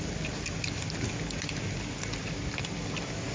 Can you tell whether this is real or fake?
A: real